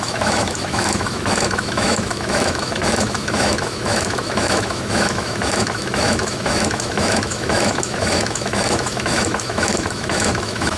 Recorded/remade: remade